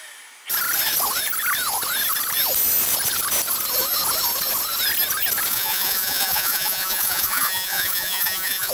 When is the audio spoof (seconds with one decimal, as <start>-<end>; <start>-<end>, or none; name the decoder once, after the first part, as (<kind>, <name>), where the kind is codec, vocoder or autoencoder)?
5.5-8.7 (vocoder, Vocos)